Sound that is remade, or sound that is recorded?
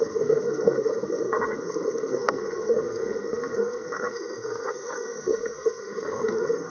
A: remade